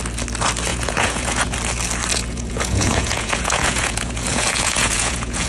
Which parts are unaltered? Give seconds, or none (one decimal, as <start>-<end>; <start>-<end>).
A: 0.0-0.7; 1.5-2.1